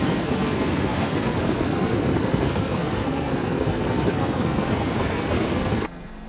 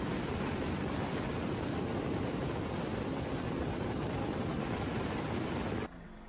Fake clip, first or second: first